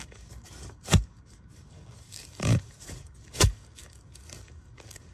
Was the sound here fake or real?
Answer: fake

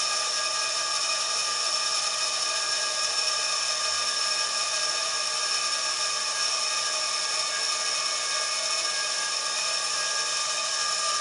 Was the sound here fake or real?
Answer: real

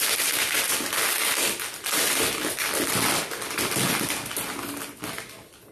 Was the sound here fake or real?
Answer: real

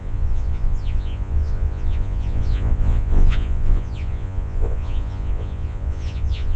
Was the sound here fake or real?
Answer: fake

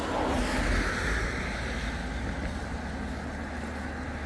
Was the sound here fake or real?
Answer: real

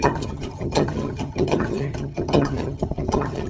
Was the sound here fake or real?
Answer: fake